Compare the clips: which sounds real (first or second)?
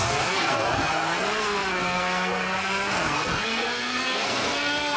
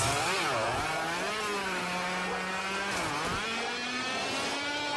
second